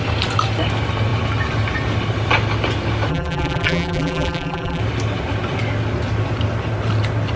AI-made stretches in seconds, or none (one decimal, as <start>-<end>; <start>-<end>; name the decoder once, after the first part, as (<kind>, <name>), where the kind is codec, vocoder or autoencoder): 3.1-4.8 (vocoder, BigVGAN v2)